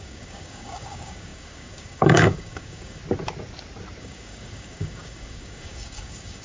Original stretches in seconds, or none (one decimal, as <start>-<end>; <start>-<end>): 3.0-4.0